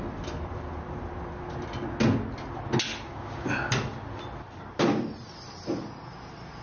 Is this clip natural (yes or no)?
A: yes